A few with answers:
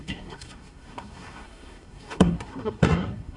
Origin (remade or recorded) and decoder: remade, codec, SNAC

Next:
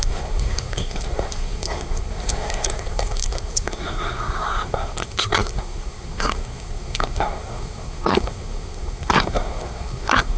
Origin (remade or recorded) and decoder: remade, codec, SNAC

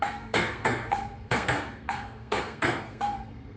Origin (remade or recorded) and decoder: remade, codec, SNAC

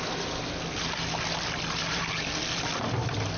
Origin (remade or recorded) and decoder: recorded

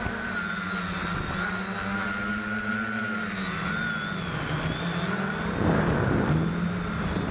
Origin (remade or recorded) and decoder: recorded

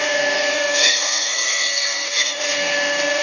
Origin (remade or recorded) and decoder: remade, codec, SNAC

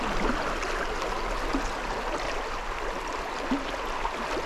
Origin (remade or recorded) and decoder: recorded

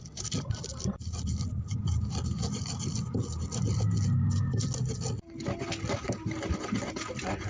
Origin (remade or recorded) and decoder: recorded